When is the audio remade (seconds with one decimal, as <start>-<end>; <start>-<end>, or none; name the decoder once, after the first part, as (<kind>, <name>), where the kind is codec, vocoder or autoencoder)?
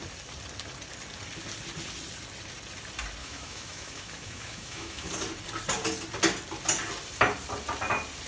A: 3.2-5.1 (autoencoder, DAC-VAE)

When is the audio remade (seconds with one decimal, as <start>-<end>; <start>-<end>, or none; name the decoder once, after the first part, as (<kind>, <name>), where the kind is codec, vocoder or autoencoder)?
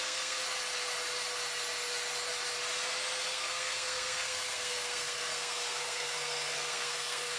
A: 0.0-0.4 (codec, SNAC); 3.2-7.4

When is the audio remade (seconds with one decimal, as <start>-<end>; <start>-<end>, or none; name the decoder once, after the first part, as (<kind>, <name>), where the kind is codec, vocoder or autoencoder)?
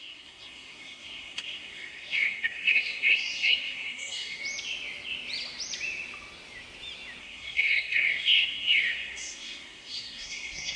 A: 0.0-4.4 (codec, SNAC); 7.2-10.8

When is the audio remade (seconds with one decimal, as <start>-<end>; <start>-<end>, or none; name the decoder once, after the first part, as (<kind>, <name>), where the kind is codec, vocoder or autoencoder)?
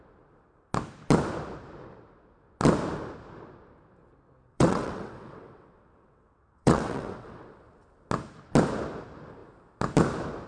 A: 4.5-7.4 (vocoder, WaveNeXt)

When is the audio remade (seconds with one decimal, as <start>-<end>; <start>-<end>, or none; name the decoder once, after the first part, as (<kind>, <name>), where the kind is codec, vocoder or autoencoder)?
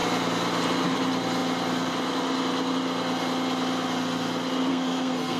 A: 4.7-5.4 (codec, SNAC)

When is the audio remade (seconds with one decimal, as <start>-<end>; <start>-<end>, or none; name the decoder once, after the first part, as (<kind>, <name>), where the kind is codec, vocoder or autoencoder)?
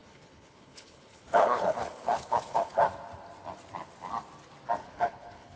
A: 0.0-2.8 (codec, HILCodec); 4.8-5.6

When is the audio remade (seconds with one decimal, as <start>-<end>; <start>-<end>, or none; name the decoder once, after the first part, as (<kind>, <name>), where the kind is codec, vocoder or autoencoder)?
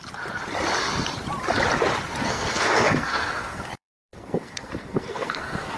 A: 2.2-5.8 (codec, SNAC)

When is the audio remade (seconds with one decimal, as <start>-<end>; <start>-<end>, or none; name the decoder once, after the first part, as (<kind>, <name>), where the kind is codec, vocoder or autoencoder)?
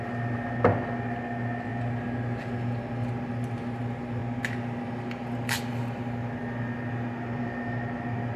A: none